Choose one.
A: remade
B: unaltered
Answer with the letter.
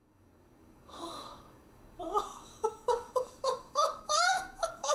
A